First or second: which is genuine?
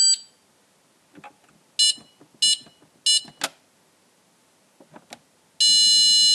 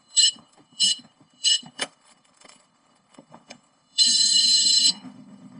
first